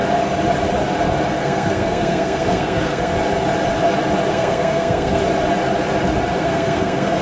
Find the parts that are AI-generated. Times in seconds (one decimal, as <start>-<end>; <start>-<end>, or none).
1.4-3.1; 4.3-5.2; 6.4-7.2